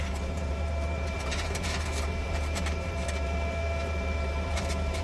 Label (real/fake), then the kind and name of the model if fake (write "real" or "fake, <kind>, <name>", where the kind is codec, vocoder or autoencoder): fake, vocoder, BigVGAN v2